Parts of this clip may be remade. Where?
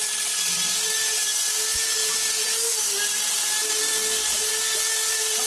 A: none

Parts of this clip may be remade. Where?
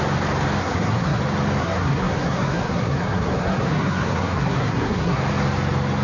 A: 0.6-1.2 (codec, SNAC); 1.6-5.2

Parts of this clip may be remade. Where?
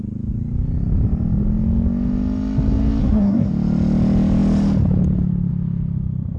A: 3.0-3.5 (codec, SNAC)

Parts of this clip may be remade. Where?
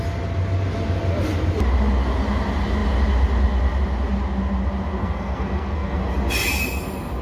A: 5.0-6.0 (codec, SNAC)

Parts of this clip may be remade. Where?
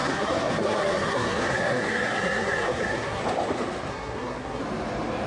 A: 0.0-3.2 (codec, SNAC); 3.9-4.6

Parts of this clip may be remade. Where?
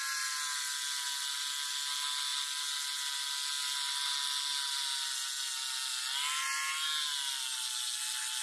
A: none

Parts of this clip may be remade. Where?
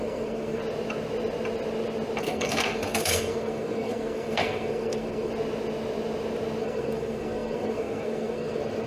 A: 0.0-0.6 (codec, SNAC); 2.2-5.3; 6.6-8.9